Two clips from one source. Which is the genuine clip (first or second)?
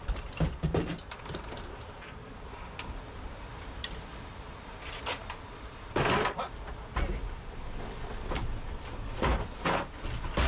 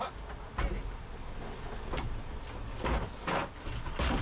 second